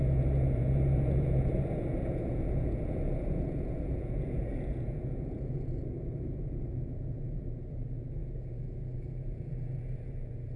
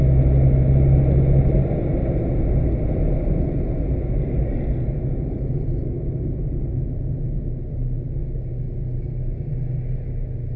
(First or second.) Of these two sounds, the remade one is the first